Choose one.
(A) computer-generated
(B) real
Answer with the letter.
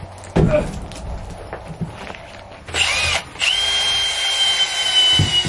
B